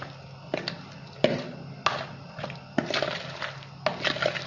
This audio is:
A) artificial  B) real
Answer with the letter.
B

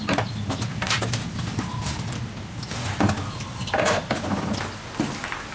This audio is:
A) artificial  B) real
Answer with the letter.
B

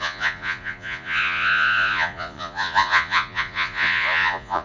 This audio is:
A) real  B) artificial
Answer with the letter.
B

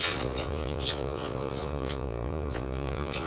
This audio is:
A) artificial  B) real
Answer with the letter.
A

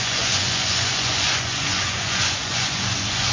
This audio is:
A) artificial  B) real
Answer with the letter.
A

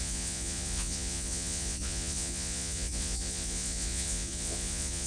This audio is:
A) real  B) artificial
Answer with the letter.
B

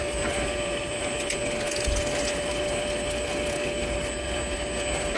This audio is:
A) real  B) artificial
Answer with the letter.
A